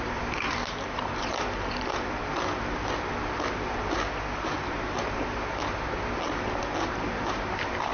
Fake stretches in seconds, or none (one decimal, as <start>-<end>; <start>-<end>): 0.0-2.2; 6.9-7.9